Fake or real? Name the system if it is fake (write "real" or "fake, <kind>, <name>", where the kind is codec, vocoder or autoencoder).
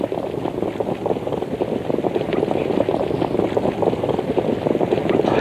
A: real